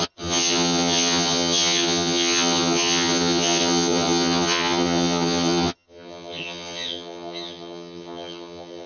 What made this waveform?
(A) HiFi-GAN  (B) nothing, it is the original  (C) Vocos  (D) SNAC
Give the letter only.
A